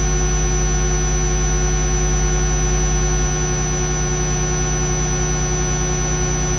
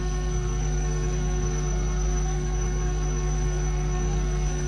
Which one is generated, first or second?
second